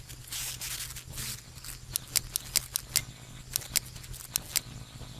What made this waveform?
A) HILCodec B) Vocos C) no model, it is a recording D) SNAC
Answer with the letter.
C